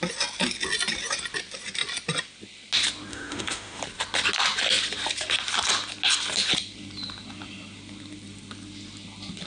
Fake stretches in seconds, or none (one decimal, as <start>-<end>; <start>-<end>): 3.1-3.8